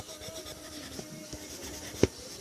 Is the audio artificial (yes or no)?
no